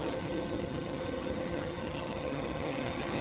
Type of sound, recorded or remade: remade